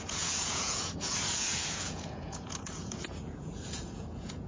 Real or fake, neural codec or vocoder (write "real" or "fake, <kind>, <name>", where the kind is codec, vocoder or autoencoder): fake, vocoder, Vocos